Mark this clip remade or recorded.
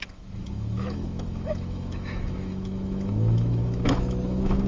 remade